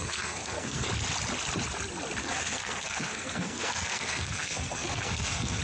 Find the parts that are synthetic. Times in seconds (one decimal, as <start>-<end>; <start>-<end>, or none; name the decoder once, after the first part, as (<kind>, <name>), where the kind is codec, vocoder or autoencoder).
0.0-0.9 (codec, SNAC); 2.2-5.6